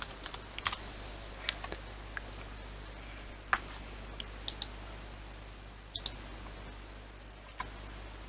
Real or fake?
real